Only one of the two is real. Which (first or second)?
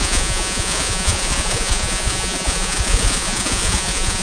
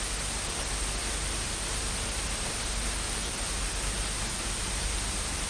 second